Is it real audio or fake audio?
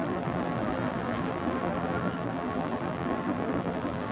fake